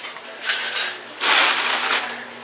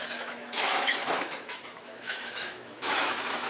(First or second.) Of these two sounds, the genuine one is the first